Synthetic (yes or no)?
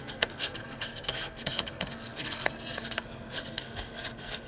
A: yes